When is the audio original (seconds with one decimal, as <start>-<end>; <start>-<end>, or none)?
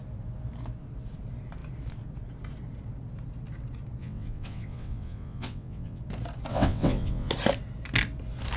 0.0-4.0; 6.0-6.5; 7.3-8.6